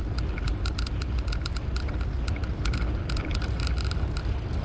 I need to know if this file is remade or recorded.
recorded